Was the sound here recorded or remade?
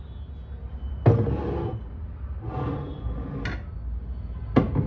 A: recorded